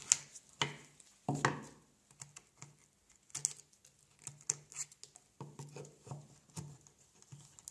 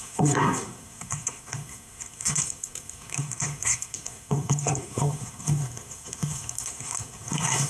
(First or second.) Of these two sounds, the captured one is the first